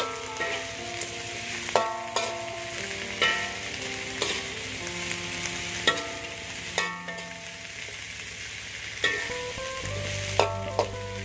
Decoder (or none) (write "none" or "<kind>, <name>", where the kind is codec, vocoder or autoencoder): none